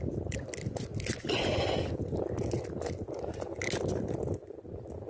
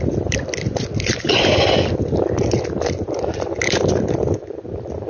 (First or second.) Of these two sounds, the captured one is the first